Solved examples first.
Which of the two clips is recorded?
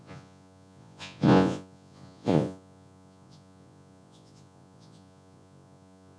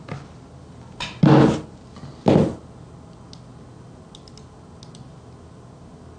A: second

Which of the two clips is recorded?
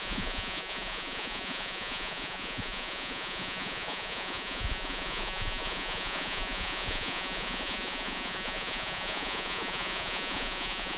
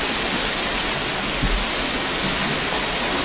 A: second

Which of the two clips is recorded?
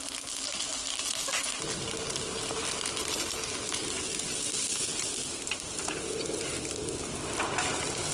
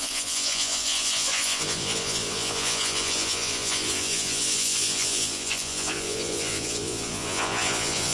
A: first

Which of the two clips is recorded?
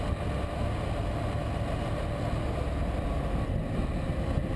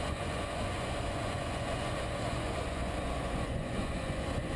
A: first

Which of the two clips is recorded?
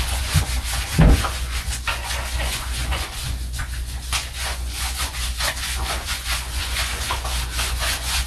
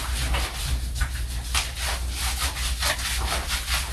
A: second